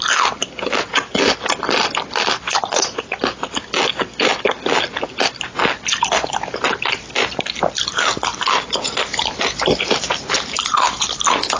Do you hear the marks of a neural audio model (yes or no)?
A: no